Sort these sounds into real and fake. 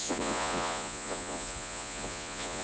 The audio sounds fake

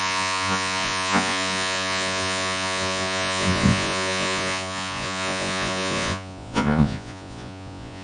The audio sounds fake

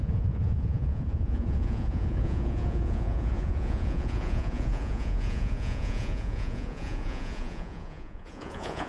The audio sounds fake